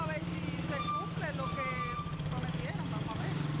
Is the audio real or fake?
real